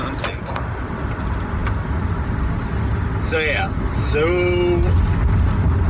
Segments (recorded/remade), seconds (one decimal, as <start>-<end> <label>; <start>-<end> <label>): 0.0-5.9 recorded